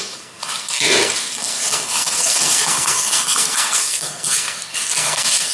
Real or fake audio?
fake